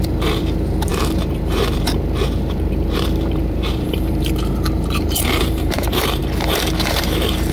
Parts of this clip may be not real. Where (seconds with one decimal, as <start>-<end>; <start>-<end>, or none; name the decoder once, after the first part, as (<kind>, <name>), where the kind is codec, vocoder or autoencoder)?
0.0-6.2 (vocoder, BigVGAN v2); 6.9-7.5